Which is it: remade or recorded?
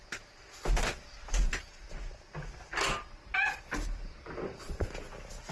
recorded